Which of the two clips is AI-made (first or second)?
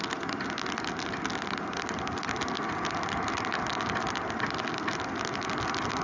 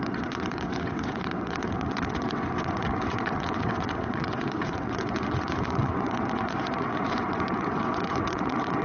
second